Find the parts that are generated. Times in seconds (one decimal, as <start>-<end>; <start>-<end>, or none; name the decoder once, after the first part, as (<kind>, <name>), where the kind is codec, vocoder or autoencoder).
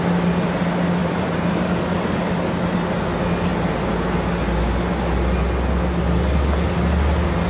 1.0-1.8 (vocoder, BigVGAN v2)